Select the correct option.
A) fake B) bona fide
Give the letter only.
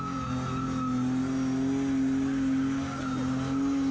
B